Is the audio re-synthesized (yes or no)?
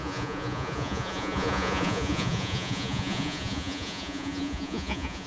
yes